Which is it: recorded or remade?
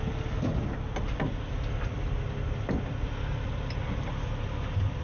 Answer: recorded